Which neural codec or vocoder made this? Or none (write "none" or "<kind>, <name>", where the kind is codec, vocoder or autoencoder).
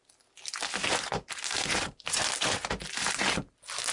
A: none